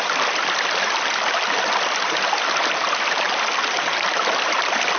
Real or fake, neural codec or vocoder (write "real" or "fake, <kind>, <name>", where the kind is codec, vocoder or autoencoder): fake, vocoder, BigVGAN v2